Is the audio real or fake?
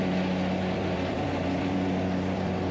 fake